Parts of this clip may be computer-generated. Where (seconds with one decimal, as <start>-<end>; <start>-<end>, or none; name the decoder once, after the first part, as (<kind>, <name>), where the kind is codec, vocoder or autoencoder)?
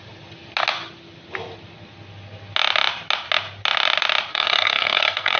4.3-5.4 (codec, SNAC)